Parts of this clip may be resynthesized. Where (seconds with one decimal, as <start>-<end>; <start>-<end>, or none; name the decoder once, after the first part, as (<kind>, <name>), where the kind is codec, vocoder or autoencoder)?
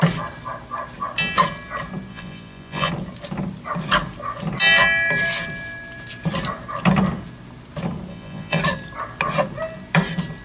2.1-2.9 (vocoder, Vocos); 8.1-8.6